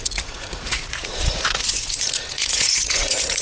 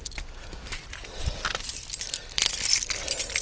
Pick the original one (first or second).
second